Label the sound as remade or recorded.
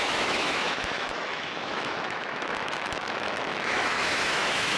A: remade